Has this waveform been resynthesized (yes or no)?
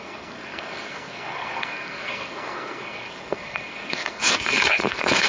yes